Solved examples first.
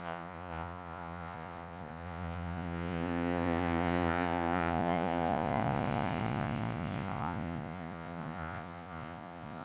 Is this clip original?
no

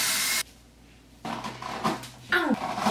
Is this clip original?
yes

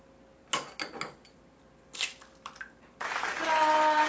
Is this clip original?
yes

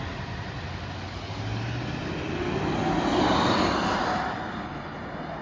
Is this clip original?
yes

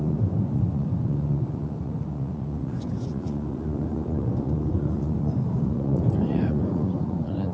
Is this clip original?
no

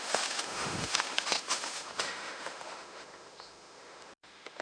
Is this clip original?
no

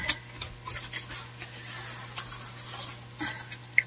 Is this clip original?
yes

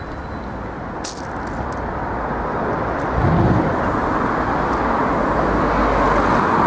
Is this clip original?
yes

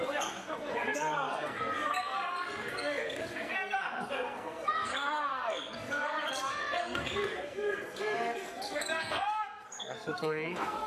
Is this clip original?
no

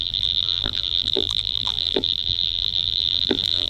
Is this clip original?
no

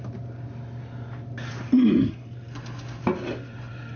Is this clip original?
yes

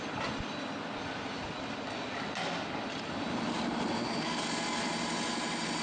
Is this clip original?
yes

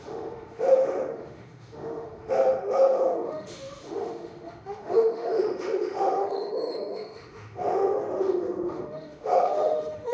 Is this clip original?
no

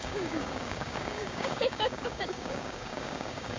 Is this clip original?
no